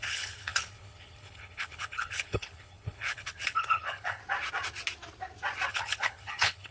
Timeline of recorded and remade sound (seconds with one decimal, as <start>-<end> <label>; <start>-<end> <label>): 0.0-4.2 remade; 4.2-5.7 recorded; 5.7-6.7 remade